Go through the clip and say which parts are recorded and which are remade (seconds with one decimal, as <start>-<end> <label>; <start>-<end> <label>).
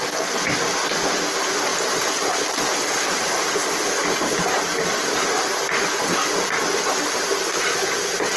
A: 0.0-1.7 recorded; 1.7-5.6 remade; 5.6-8.4 recorded